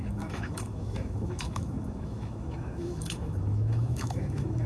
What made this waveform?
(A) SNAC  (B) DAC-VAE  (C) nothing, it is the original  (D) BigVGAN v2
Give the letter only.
B